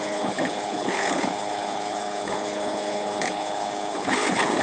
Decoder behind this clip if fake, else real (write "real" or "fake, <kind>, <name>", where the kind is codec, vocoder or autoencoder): fake, codec, HILCodec